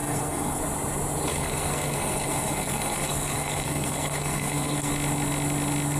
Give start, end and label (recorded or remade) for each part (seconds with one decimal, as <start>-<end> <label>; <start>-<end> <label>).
0.0-0.6 remade; 0.6-1.3 recorded; 1.3-4.9 remade; 4.9-6.0 recorded